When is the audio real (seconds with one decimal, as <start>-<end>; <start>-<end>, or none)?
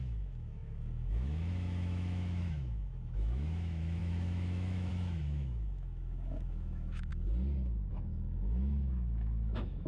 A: 7.1-7.9